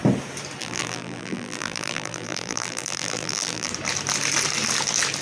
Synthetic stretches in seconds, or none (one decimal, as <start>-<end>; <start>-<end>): 0.6-3.7